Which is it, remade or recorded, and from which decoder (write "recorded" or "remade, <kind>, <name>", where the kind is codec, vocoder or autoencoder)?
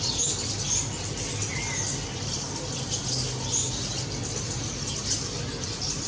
recorded